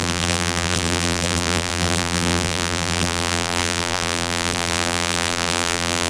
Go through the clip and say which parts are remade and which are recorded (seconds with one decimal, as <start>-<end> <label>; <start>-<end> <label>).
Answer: 0.0-6.1 remade